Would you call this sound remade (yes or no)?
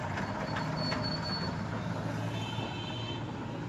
no